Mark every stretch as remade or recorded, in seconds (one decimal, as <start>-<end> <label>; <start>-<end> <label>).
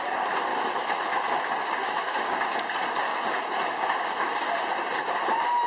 0.0-0.5 recorded; 0.5-1.4 remade; 1.4-1.8 recorded; 1.8-2.3 remade; 2.3-3.1 recorded; 3.1-4.4 remade; 4.4-5.7 recorded